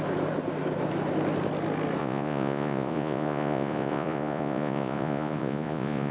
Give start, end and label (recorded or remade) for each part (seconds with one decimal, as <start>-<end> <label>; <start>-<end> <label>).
0.0-2.0 recorded; 2.0-6.1 remade

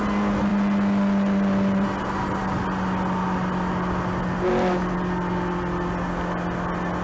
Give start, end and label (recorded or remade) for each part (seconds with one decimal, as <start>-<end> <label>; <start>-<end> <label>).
0.0-7.0 recorded

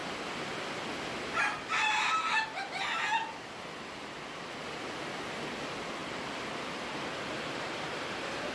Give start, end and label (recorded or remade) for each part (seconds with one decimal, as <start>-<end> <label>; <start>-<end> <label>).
0.0-8.5 recorded

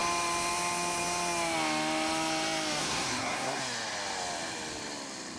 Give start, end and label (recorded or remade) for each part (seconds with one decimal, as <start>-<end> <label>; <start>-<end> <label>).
0.0-2.8 recorded; 2.8-3.6 remade; 3.6-5.4 recorded

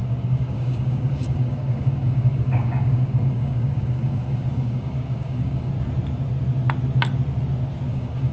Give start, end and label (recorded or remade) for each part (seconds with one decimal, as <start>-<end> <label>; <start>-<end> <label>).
0.0-5.7 remade; 5.7-7.9 recorded; 7.9-8.3 remade

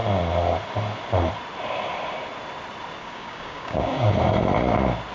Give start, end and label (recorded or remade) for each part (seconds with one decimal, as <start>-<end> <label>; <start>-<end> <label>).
0.0-3.0 recorded; 3.0-4.1 remade; 4.1-5.1 recorded

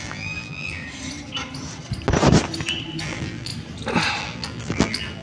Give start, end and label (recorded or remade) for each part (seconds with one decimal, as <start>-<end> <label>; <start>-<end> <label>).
0.0-0.8 remade; 0.8-3.0 recorded; 3.0-3.5 remade; 3.5-4.2 recorded; 4.2-5.2 remade

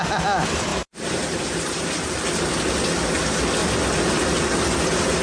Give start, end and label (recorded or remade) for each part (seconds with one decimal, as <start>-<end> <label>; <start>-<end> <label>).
0.0-0.7 recorded; 0.7-2.4 remade; 2.4-5.2 recorded